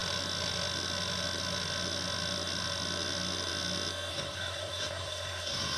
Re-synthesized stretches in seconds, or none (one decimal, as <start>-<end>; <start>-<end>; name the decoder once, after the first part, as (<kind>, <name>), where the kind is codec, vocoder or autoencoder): 4.1-5.8 (codec, SNAC)